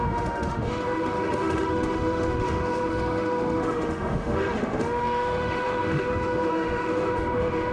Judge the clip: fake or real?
fake